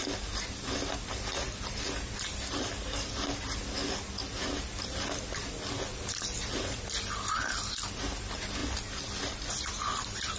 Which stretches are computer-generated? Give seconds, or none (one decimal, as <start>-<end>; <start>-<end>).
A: none